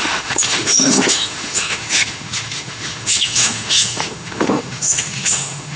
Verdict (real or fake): fake